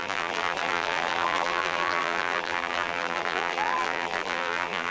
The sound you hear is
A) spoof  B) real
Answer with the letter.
A